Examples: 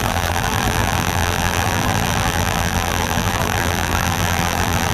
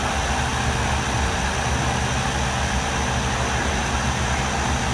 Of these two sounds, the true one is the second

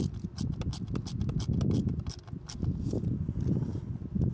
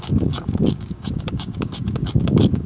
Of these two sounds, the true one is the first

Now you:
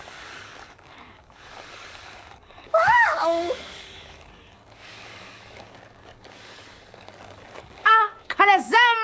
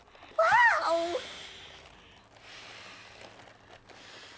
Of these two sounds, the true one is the second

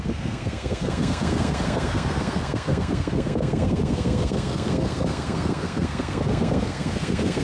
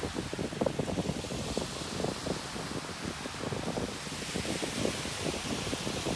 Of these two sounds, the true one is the second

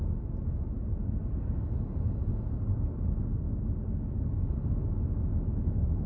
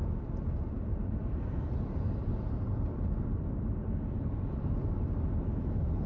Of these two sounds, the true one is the first